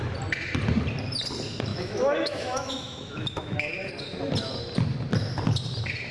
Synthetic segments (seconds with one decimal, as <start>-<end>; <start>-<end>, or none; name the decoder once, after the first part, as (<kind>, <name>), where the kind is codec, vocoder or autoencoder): 1.7-3.9 (autoencoder, DAC-VAE)